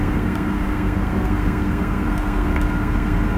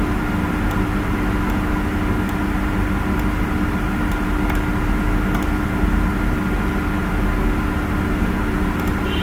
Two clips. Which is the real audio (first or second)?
second